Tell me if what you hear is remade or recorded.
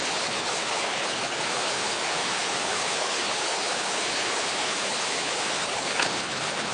remade